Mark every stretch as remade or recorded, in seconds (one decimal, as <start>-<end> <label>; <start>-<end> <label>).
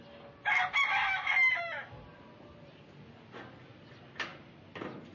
0.0-5.1 recorded